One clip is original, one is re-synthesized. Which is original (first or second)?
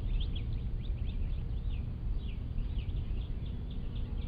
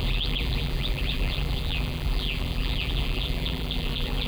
first